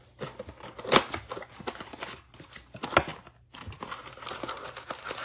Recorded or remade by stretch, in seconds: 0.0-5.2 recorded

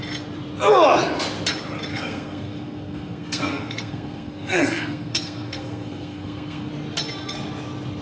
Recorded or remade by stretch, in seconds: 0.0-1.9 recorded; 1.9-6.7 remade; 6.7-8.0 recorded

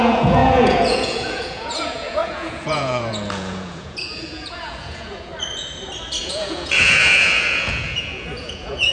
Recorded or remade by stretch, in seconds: 0.0-5.3 remade; 5.3-6.2 recorded; 6.2-8.9 remade

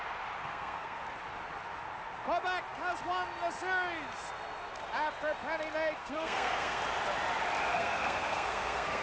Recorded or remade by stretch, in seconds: 0.0-0.4 recorded; 0.4-1.0 remade; 1.0-6.0 recorded; 6.0-6.8 remade; 6.8-7.7 recorded; 7.7-9.0 remade

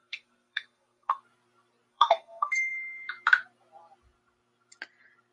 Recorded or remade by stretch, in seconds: 0.0-1.2 remade; 1.2-1.9 recorded; 1.9-2.7 remade; 2.7-5.3 recorded

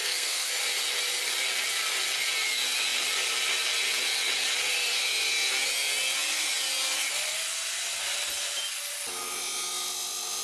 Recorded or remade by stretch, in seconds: 0.0-0.5 remade; 0.5-10.4 recorded

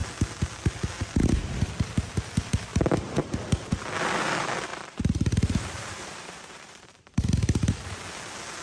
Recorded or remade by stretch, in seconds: 0.0-2.7 recorded; 2.7-3.2 remade; 3.2-4.7 recorded; 4.7-7.0 remade; 7.0-8.6 recorded